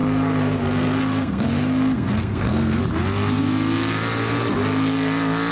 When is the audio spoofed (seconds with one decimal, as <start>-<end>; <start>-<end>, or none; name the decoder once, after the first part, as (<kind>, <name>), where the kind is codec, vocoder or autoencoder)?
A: 0.0-2.8 (codec, SNAC)